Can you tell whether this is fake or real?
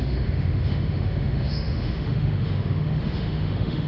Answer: fake